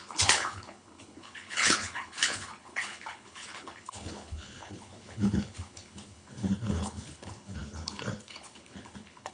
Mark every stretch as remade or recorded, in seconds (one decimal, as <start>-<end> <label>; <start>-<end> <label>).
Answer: 0.0-9.3 remade